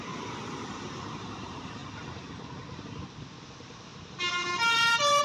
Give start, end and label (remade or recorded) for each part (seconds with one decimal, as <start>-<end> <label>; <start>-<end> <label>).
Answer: 0.0-1.8 remade; 1.8-3.4 recorded; 3.4-5.2 remade

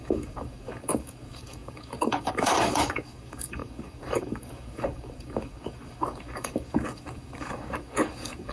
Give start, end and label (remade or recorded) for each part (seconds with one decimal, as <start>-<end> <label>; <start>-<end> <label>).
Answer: 0.0-8.5 remade